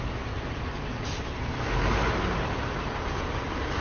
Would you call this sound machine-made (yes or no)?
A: yes